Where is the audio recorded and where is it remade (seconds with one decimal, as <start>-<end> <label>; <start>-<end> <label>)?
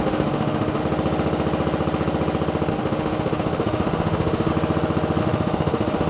0.0-0.8 remade; 0.8-2.7 recorded; 2.7-4.5 remade; 4.5-5.2 recorded; 5.2-6.1 remade